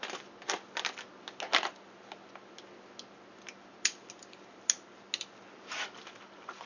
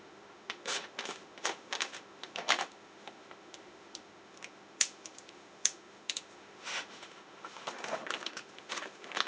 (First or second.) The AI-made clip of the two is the second